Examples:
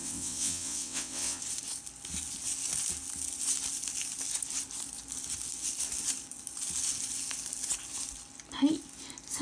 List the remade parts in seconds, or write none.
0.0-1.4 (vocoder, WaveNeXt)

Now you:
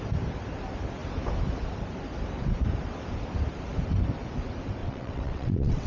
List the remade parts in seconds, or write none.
4.8-5.9 (vocoder, WaveNeXt)

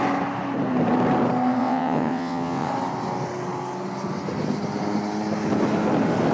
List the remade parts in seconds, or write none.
1.6-2.7 (vocoder, WaveNeXt)

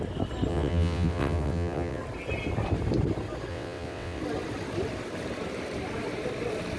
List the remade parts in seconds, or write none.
0.5-2.0 (vocoder, WaveNeXt); 3.5-4.2

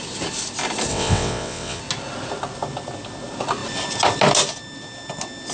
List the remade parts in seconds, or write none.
0.9-1.8 (vocoder, WaveNeXt)

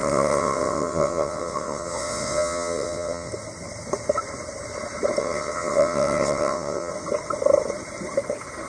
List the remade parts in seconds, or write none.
0.0-3.3 (vocoder, WaveNeXt); 5.2-6.9

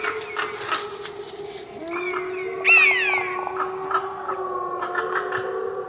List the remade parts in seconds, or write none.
none

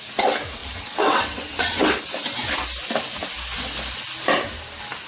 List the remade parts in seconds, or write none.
0.6-2.0 (vocoder, WaveNeXt)